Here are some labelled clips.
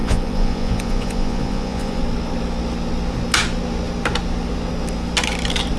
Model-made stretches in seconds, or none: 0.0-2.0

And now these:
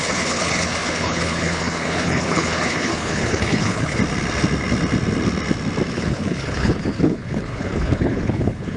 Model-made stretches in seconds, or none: 0.0-4.0; 5.9-8.8

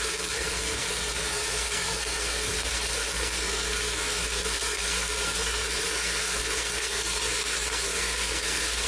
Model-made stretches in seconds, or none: 0.0-8.9

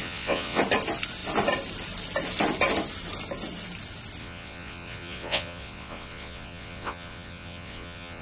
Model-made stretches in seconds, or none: 0.0-0.6; 4.2-8.2

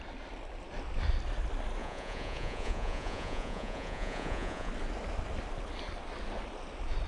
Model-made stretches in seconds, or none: 1.8-4.7

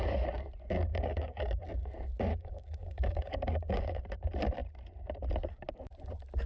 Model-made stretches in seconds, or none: 0.9-1.6; 2.3-4.0

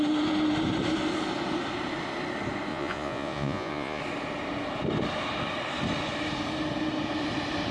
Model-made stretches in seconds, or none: 2.7-4.0